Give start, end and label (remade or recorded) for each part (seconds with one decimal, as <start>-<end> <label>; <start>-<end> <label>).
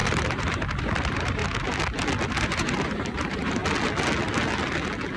0.0-1.4 remade; 1.4-2.3 recorded; 2.3-3.6 remade; 3.6-5.2 recorded